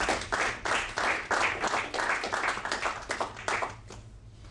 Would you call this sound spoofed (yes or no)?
no